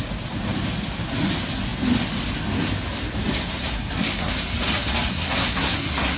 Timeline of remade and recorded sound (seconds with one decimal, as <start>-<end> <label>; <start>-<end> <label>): 0.0-3.6 recorded; 3.6-4.3 remade; 4.3-5.1 recorded; 5.1-6.2 remade